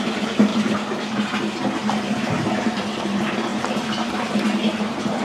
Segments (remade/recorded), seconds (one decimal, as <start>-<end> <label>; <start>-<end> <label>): 0.0-5.2 remade